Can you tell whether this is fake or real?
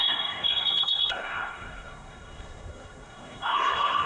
fake